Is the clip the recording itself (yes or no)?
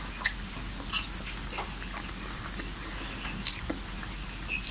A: yes